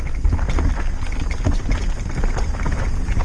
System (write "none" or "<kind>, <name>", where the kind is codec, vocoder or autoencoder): none